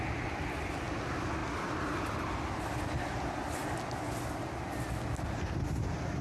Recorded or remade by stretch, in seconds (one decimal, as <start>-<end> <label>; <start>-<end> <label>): 0.0-6.2 recorded